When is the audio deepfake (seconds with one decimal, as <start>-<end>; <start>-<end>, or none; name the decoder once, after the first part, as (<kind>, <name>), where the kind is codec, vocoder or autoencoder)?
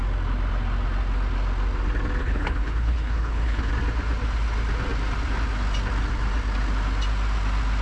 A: 2.2-3.7 (codec, HILCodec)